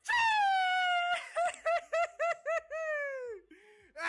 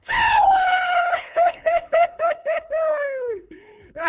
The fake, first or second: second